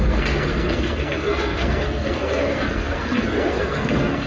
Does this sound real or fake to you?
fake